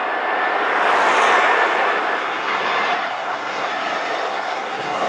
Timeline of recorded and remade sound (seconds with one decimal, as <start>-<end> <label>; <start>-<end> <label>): 0.0-2.2 recorded; 2.2-2.6 remade; 2.6-3.1 recorded; 3.1-3.7 remade; 3.7-4.3 recorded; 4.3-5.1 remade